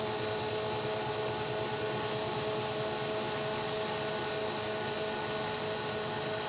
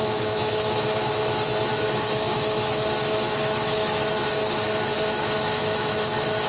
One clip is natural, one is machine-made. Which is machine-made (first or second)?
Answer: second